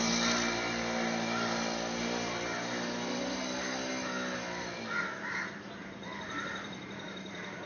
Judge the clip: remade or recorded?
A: recorded